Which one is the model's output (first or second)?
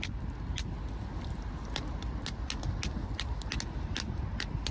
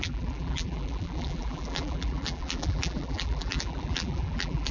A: second